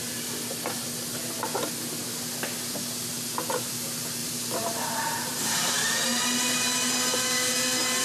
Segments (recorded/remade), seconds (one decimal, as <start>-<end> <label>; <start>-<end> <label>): 0.0-4.2 recorded; 4.2-5.7 remade; 5.7-7.1 recorded; 7.1-8.0 remade